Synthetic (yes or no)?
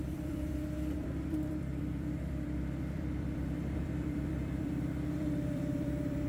yes